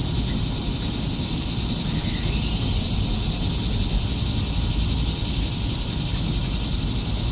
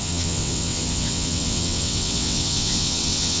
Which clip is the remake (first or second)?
second